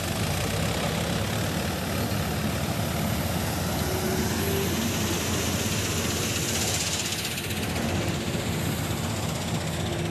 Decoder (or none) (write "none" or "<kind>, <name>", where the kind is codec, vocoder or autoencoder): none